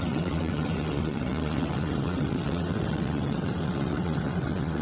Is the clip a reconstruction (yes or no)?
yes